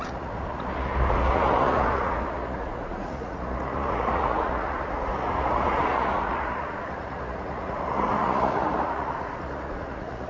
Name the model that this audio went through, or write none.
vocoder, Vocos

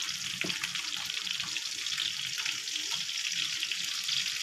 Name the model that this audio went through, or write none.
none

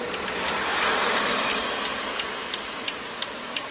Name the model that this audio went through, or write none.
none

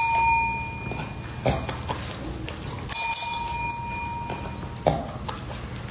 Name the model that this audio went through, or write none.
none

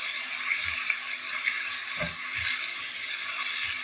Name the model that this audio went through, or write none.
none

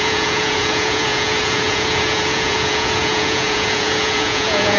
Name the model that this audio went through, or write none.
vocoder, Vocos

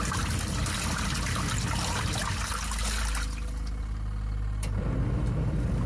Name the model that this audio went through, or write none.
none